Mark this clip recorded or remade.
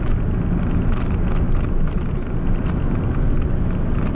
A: recorded